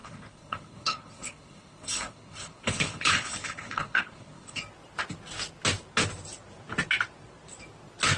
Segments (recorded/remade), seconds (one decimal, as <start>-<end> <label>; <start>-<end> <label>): 0.0-4.6 remade; 4.6-8.2 recorded